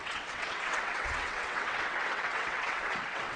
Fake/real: fake